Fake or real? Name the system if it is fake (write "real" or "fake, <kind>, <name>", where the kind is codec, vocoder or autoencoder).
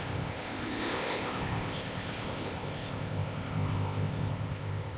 fake, codec, ZipCodec